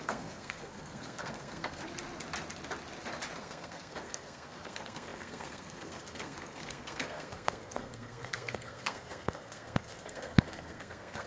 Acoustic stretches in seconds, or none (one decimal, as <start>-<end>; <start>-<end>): 1.8-3.4